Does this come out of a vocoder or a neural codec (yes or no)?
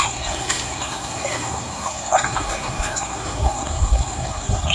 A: yes